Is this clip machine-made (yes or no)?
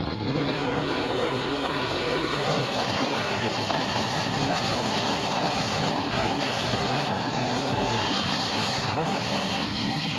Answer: yes